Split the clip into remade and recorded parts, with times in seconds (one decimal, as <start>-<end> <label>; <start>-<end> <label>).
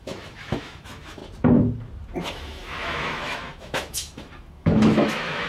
0.0-1.2 remade; 1.2-2.2 recorded; 2.2-5.5 remade